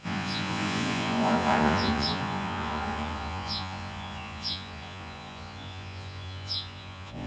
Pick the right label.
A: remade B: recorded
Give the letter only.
A